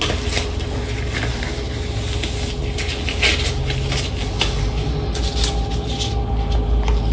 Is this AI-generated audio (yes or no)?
no